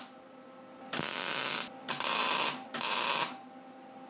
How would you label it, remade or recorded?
recorded